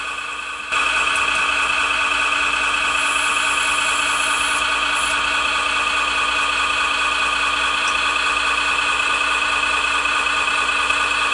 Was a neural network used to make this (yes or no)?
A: no